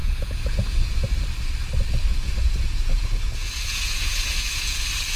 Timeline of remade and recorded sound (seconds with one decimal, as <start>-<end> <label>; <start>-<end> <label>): 0.0-1.0 remade; 1.0-2.1 recorded; 2.1-4.8 remade; 4.8-5.2 recorded